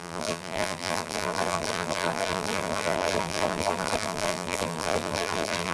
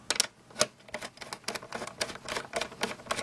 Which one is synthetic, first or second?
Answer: first